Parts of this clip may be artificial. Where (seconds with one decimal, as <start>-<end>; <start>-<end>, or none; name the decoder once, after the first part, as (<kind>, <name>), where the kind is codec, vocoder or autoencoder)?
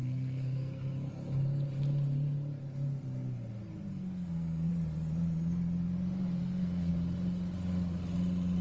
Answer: 0.0-1.1 (codec, SNAC); 3.9-4.7; 6.4-6.9